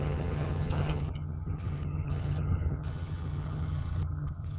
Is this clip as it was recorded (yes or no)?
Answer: no